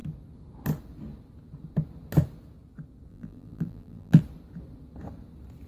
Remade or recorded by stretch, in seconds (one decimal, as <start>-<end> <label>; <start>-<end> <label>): 0.0-3.1 recorded; 3.1-4.2 remade; 4.2-5.7 recorded